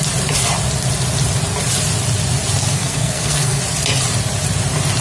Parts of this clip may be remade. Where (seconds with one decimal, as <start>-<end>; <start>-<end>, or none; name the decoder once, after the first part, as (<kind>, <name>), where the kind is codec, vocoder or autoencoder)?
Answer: 2.6-3.6 (codec, SNAC)